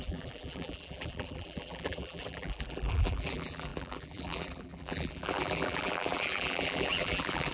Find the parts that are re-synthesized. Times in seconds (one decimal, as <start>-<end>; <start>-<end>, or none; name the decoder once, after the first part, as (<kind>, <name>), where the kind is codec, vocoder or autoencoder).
0.0-7.5 (vocoder, BigVGAN v2)

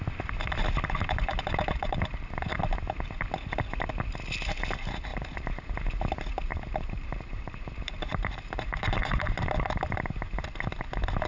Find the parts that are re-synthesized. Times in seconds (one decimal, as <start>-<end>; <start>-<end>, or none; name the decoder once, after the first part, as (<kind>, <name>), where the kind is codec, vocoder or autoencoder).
1.3-2.6 (vocoder, BigVGAN v2); 5.1-5.7; 6.5-9.5

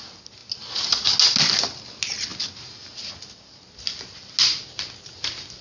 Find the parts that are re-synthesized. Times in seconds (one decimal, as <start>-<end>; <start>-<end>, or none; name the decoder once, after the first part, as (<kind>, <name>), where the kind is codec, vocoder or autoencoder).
none

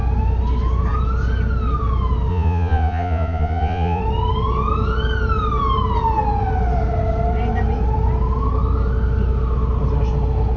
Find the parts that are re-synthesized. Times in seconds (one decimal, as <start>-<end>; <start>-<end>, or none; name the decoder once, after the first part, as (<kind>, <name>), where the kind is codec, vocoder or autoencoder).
2.3-4.0 (vocoder, Vocos)

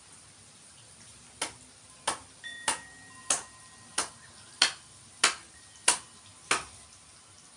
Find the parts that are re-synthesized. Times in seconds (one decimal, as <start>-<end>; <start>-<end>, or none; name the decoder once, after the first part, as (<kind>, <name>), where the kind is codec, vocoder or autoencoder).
none

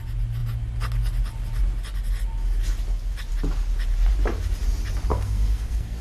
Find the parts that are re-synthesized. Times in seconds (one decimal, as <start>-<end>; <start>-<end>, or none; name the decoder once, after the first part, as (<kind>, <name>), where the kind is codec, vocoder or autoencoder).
5.1-6.0 (codec, SNAC)